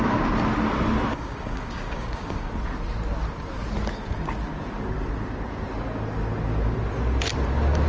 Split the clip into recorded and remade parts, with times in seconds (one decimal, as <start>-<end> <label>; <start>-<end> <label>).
0.0-1.1 recorded; 1.1-2.5 remade; 2.5-7.9 recorded